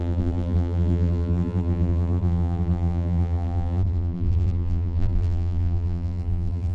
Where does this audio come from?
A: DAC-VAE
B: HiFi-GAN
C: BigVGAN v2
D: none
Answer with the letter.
C